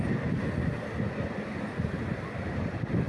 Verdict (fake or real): real